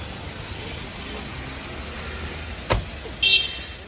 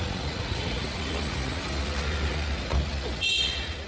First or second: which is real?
first